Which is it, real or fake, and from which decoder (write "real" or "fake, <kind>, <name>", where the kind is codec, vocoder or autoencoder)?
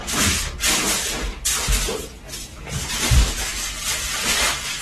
fake, vocoder, BigVGAN v2